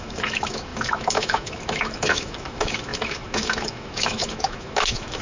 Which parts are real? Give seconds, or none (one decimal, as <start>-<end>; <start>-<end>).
none